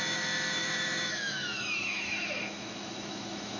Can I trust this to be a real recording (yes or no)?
no